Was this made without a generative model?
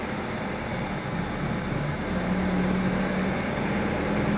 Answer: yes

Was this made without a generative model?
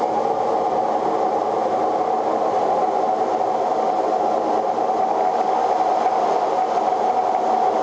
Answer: yes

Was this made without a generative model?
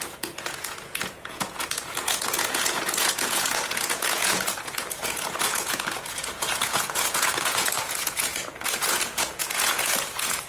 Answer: no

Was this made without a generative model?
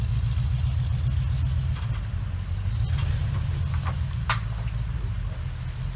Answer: yes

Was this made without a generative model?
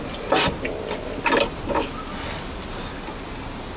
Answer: yes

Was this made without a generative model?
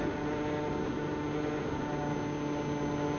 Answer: yes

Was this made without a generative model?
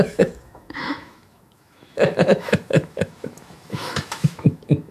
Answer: no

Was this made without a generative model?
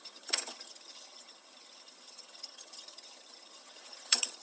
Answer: no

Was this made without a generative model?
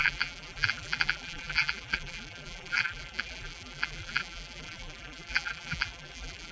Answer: no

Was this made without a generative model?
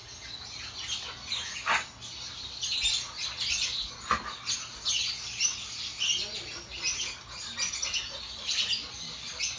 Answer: yes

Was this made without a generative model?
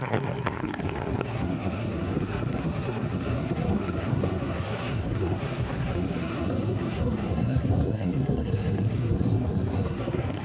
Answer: no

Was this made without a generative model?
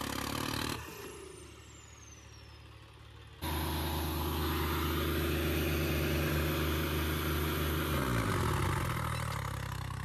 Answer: yes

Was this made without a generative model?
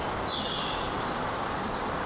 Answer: yes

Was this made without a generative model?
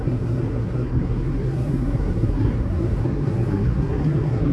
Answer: no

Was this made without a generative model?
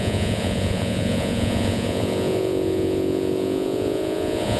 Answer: no